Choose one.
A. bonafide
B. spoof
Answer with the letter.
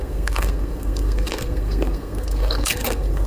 B